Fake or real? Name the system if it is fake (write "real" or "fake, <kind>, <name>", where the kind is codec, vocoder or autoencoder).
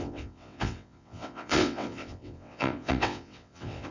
fake, vocoder, WaveNeXt